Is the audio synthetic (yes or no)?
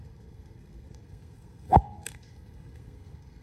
yes